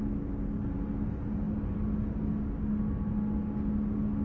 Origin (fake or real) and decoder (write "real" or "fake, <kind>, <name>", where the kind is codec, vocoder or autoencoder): real